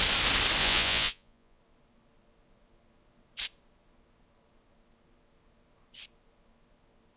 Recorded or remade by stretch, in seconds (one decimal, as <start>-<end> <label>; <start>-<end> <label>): 0.0-0.6 recorded; 0.6-1.6 remade; 1.6-7.2 recorded